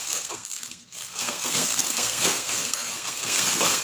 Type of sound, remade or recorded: remade